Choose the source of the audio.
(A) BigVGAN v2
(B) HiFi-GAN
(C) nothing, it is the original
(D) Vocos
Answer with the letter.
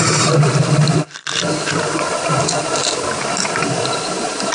A